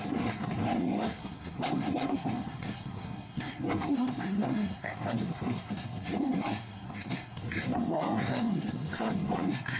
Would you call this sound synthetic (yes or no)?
yes